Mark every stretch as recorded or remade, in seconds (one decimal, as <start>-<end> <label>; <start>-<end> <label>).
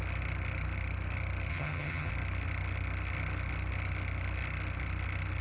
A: 0.0-1.5 recorded; 1.5-2.1 remade; 2.1-5.4 recorded